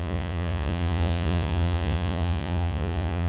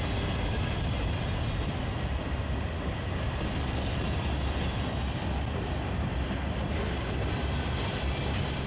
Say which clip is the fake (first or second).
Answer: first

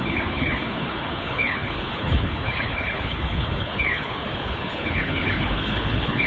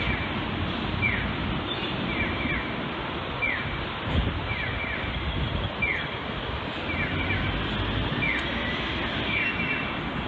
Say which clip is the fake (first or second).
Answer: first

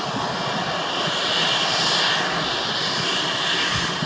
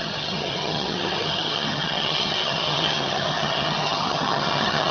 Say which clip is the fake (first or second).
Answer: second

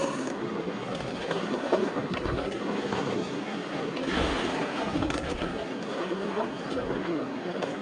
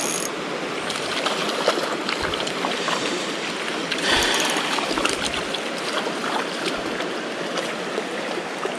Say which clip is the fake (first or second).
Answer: first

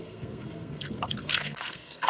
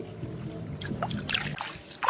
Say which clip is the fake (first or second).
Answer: first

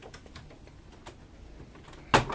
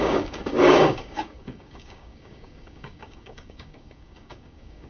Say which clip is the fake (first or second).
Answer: second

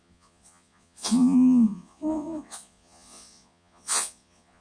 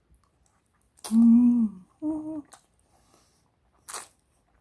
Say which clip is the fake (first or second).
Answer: first